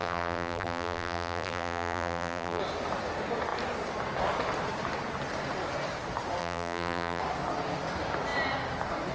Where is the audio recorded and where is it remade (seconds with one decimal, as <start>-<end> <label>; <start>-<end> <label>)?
0.0-2.6 remade; 2.6-6.4 recorded; 6.4-7.2 remade; 7.2-9.1 recorded